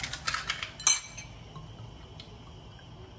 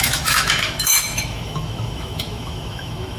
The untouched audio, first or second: first